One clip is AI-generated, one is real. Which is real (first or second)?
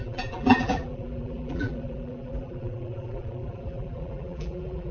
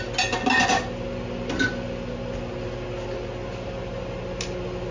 second